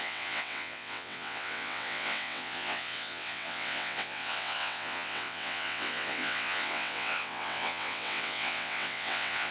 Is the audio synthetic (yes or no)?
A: yes